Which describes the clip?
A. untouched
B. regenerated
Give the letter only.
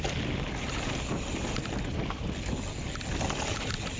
A